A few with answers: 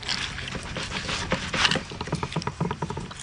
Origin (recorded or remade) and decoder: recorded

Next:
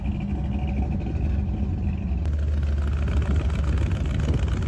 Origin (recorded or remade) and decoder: recorded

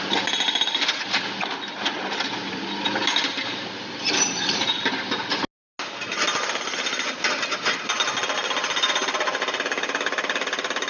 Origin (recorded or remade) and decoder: recorded